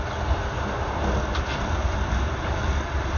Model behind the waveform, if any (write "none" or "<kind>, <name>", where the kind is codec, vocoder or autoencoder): none